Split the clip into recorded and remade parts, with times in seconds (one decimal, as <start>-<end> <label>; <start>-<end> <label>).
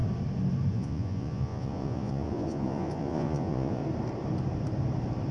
0.0-0.7 recorded; 0.7-3.8 remade; 3.8-5.3 recorded